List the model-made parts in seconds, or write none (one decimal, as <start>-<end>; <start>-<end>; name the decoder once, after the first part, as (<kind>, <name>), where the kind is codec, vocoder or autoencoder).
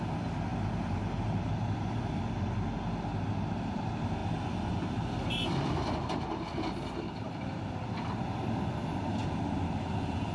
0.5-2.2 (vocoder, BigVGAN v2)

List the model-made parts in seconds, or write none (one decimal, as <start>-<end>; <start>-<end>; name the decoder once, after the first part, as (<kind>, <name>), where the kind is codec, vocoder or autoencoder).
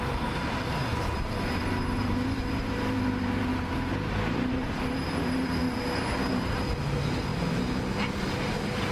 0.0-0.9 (vocoder, BigVGAN v2); 1.6-3.5; 4.1-5.6; 6.2-7.3; 8.0-8.9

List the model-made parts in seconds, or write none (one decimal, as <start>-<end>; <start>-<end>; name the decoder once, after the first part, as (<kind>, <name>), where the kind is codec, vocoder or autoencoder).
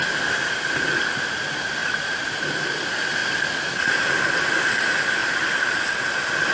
1.8-2.5 (vocoder, BigVGAN v2); 5.2-5.8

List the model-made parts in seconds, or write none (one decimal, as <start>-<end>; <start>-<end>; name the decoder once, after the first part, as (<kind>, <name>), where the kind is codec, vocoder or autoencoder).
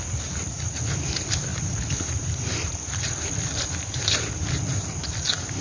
1.5-3.3 (vocoder, BigVGAN v2)